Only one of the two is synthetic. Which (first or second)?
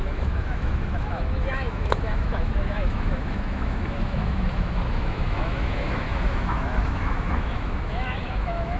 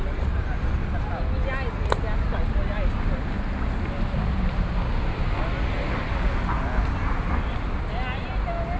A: first